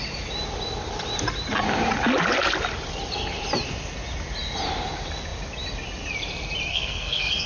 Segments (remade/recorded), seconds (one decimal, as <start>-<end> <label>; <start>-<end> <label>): 0.0-6.7 recorded; 6.7-7.5 remade